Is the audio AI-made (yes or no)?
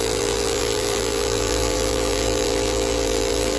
yes